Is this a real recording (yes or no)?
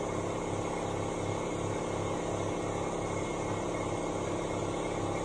yes